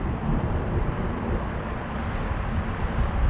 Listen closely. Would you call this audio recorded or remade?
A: remade